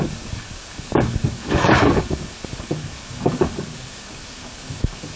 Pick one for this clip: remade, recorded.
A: remade